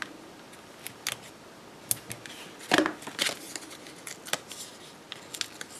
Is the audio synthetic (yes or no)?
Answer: no